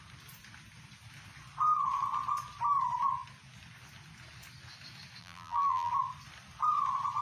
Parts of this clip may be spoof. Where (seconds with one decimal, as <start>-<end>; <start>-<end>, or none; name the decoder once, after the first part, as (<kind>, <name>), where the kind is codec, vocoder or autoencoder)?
5.2-5.9 (vocoder, BigVGAN v2)